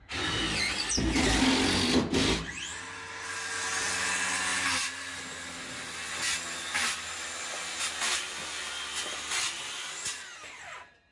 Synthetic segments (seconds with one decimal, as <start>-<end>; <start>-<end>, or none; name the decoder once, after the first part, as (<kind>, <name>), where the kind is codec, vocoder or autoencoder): none